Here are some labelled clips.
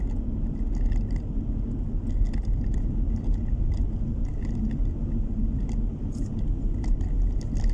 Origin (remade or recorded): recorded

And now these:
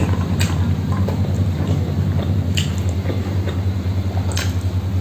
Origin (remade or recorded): recorded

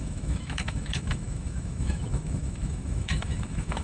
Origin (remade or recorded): remade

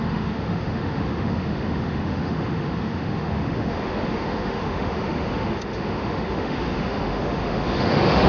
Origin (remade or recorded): remade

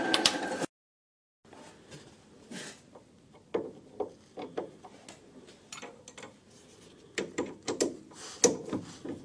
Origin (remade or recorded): recorded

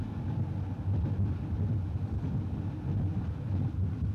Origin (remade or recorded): recorded